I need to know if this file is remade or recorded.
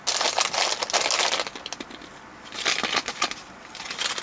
recorded